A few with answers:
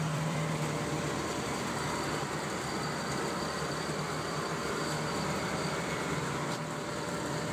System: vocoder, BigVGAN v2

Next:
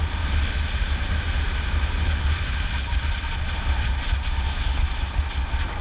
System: none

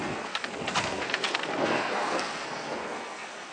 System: codec, SNAC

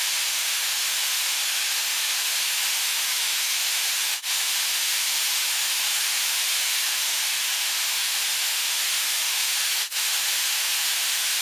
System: autoencoder, DAC-VAE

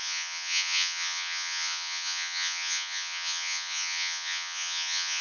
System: vocoder, Vocos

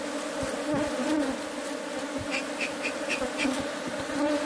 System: none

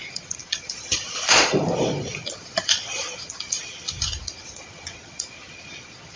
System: vocoder, Vocos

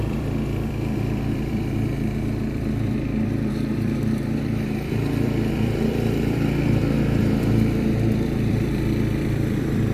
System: vocoder, BigVGAN v2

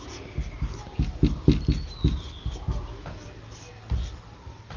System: none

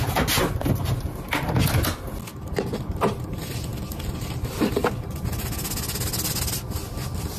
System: none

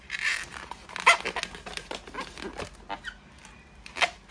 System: none